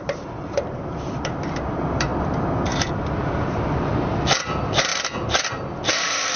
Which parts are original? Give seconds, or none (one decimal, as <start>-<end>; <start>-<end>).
2.1-4.4; 4.9-5.5